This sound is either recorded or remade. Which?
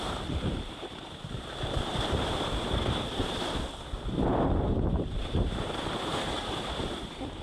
remade